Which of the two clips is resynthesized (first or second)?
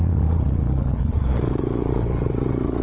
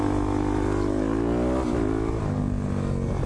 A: first